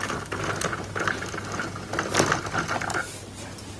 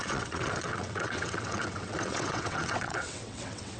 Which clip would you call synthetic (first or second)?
second